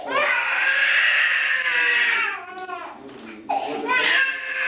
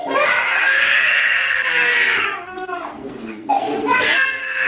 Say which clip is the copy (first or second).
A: second